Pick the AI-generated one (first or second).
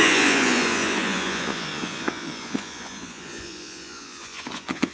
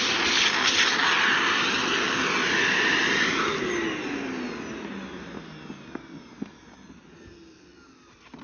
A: first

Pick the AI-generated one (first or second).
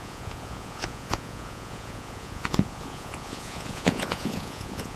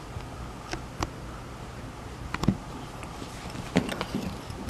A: first